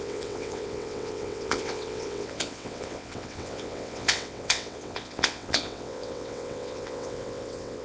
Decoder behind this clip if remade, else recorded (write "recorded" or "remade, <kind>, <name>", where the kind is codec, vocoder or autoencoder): remade, vocoder, WaveNeXt